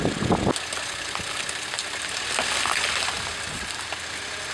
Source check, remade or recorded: recorded